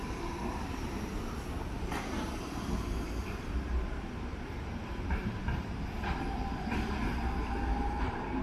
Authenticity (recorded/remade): remade